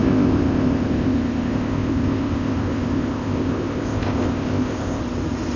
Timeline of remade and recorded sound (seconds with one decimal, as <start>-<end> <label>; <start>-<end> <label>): 0.0-5.0 remade; 5.0-5.6 recorded

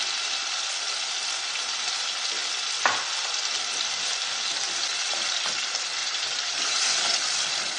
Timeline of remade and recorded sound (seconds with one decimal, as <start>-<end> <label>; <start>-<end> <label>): 0.0-6.0 recorded; 6.0-6.5 remade; 6.5-7.8 recorded

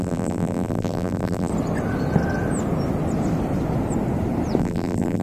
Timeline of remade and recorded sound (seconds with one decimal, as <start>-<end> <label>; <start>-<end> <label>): 0.0-1.5 remade; 1.5-4.6 recorded; 4.6-5.2 remade

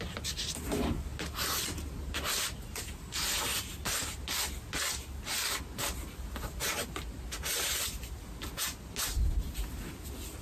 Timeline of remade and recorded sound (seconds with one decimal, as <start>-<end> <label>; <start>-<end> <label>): 0.0-10.4 recorded

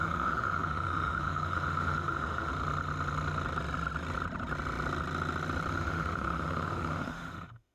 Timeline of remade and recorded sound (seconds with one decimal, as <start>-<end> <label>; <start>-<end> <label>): 0.0-2.5 remade; 2.5-5.7 recorded; 5.7-7.7 remade